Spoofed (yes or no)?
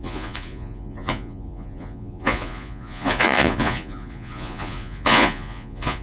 yes